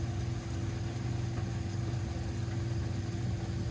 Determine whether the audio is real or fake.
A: real